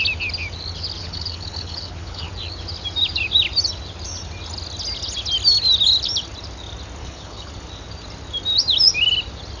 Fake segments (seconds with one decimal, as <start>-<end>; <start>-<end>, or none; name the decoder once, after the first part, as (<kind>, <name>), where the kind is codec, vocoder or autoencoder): 1.0-2.3 (codec, HILCodec); 7.0-7.5